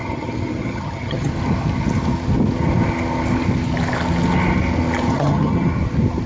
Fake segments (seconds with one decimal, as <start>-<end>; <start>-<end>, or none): 0.0-1.3; 5.1-5.7